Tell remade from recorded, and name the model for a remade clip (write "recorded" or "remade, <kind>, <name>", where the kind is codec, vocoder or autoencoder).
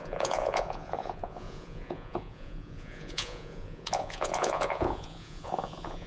remade, vocoder, Vocos